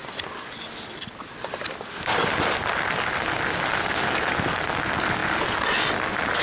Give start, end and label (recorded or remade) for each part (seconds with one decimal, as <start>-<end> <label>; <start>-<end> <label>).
0.0-6.4 recorded